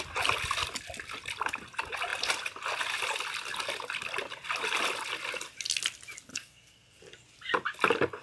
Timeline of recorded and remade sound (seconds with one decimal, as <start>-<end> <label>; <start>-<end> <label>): 0.0-6.3 recorded; 6.3-7.0 remade; 7.0-8.2 recorded